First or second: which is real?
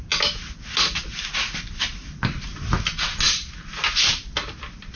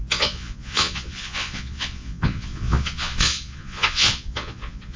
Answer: first